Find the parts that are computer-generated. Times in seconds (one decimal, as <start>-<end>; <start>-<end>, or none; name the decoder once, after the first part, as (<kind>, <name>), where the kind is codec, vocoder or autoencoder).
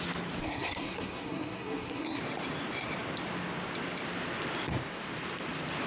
0.4-2.2 (codec, SNAC)